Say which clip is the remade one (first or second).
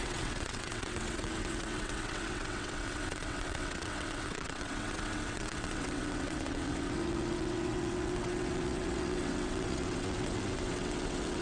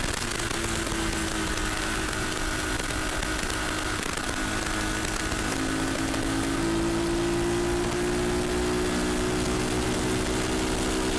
first